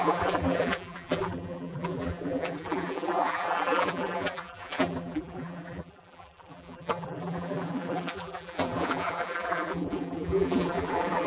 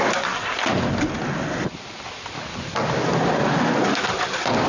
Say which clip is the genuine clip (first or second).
second